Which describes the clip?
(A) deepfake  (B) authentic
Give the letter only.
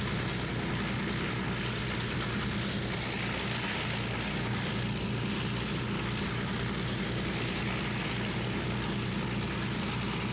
B